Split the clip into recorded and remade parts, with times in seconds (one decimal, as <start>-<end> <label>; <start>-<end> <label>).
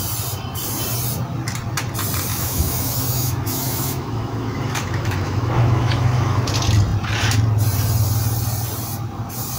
0.0-2.3 recorded; 2.3-6.5 remade; 6.5-9.6 recorded